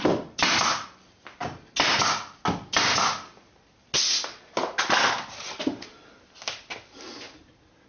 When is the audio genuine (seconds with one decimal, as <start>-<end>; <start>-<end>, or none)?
0.0-7.9